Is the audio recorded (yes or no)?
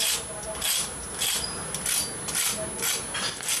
yes